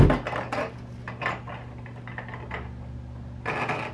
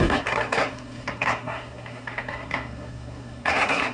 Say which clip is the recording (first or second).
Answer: first